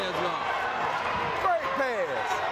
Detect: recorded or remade recorded